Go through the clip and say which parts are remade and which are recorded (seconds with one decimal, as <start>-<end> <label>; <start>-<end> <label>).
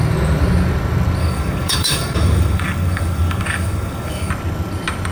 0.0-1.2 recorded; 1.2-4.3 remade; 4.3-5.1 recorded